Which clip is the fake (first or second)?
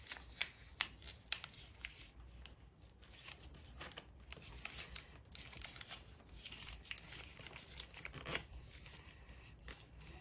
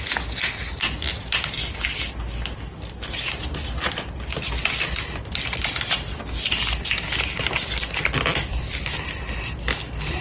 first